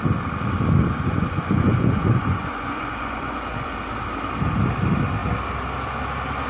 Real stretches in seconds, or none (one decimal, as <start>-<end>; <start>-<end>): 0.0-0.8; 3.7-6.5